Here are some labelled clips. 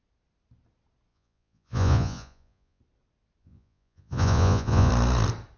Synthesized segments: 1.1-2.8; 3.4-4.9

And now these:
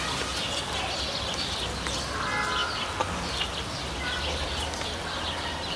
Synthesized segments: none

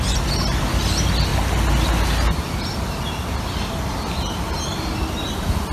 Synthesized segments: none

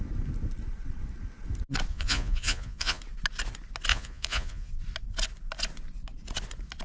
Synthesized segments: 1.9-3.0; 3.9-4.7

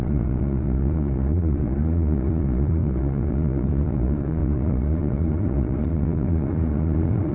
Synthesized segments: 0.0-7.3

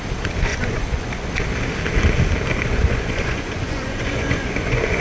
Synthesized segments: 0.5-1.3; 2.5-5.0

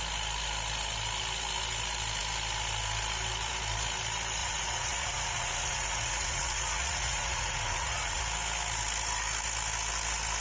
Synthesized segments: 4.4-8.2